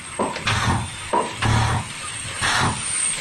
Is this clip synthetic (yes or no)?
no